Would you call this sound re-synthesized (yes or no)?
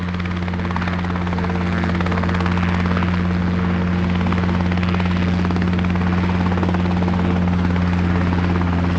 no